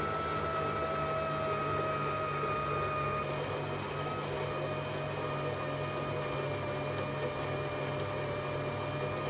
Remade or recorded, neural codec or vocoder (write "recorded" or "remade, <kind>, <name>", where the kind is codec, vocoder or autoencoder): recorded